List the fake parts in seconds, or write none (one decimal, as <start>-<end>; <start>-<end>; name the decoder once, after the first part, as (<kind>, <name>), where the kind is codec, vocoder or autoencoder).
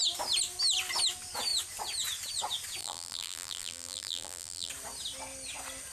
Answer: 2.8-4.7 (vocoder, BigVGAN v2)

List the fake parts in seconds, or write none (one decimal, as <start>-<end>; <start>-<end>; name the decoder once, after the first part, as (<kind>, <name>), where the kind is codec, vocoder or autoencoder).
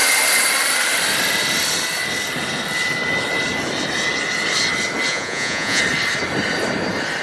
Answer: 5.1-5.8 (vocoder, Vocos)